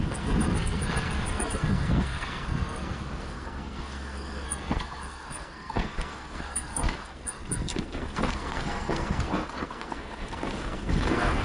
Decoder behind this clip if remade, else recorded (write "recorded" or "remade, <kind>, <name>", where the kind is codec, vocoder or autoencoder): remade, codec, SNAC